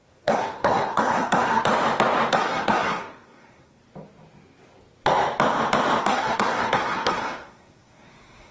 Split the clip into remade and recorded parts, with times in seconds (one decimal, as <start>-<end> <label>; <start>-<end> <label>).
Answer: 0.0-1.7 remade; 1.7-2.3 recorded; 2.3-3.8 remade; 3.8-6.0 recorded; 6.0-8.5 remade